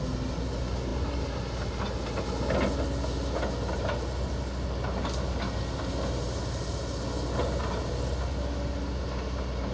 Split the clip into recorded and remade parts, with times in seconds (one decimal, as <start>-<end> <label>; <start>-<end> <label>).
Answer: 0.0-9.7 recorded